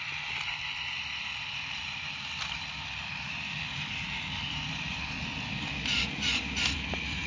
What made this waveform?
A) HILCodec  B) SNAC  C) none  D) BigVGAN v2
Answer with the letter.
D